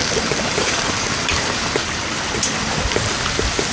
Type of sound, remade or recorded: recorded